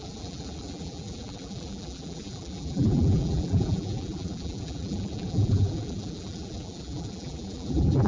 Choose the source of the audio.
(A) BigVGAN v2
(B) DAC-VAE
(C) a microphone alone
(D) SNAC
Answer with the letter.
A